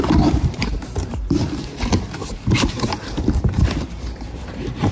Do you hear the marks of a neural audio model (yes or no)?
yes